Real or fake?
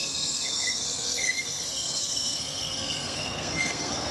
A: fake